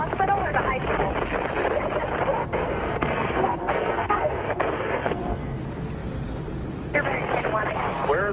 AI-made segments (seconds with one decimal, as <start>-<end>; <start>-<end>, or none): 2.4-5.6